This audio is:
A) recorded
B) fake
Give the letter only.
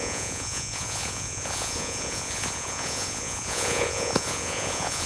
B